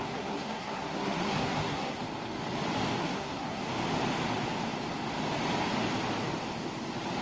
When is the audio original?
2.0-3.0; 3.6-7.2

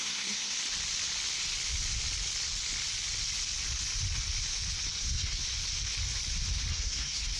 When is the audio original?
0.6-5.0; 5.4-6.7

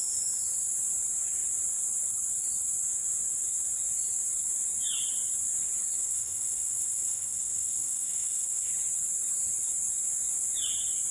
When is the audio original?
0.0-6.0; 8.7-11.1

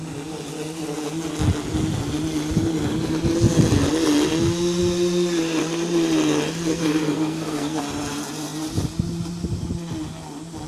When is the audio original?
0.0-6.7; 7.8-10.7

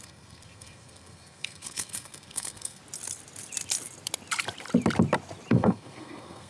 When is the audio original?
2.8-5.5

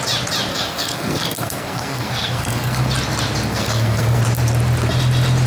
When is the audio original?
0.0-0.5; 2.9-3.5; 4.2-5.5